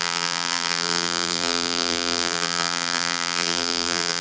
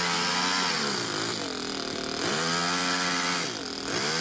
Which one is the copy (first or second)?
first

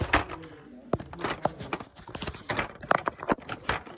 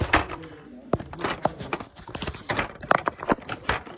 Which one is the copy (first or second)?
second